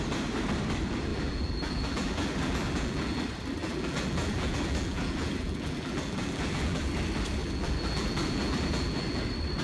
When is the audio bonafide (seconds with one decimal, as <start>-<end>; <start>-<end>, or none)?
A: 0.0-1.1; 3.2-3.6; 6.9-7.4; 9.2-9.6